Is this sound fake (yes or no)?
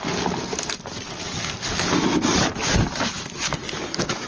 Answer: no